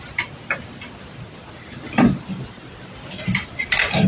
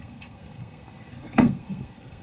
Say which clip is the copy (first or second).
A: second